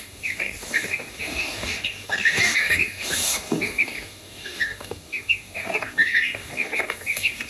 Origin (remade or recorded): remade